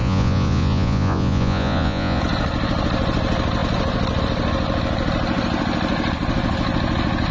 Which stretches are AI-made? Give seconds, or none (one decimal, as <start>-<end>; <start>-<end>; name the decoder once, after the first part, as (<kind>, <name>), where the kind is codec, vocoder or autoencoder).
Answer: 0.0-2.2 (vocoder, Vocos)